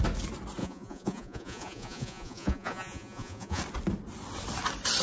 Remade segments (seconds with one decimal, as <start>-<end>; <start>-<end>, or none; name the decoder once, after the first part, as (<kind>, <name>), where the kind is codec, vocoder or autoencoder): 0.6-3.6 (vocoder, Vocos)